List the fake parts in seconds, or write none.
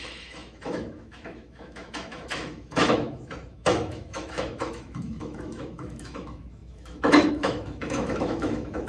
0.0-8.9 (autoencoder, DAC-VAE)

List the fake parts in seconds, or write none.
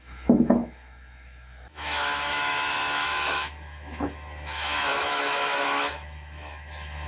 0.0-7.1 (autoencoder, DAC-VAE)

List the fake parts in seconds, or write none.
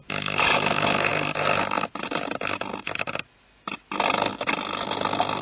none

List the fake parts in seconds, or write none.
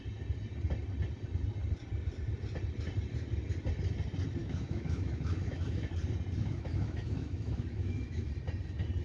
4.4-5.9 (autoencoder, DAC-VAE); 6.4-8.3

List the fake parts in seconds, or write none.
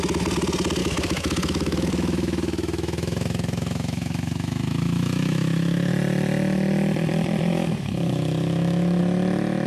0.8-5.9 (autoencoder, DAC-VAE); 7.5-9.0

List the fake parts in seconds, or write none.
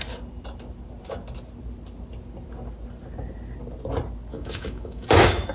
4.3-5.5 (autoencoder, DAC-VAE)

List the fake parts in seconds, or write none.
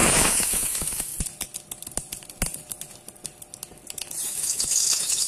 0.0-1.1 (autoencoder, DAC-VAE); 4.3-5.3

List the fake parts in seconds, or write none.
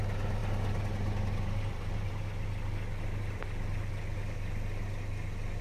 none